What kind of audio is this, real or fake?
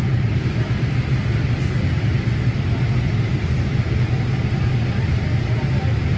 real